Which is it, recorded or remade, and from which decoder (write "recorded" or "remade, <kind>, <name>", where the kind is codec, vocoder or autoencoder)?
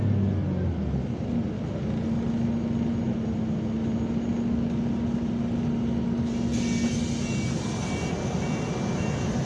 recorded